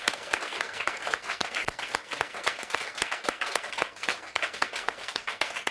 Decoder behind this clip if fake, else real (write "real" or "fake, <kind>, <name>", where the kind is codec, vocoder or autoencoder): fake, codec, SNAC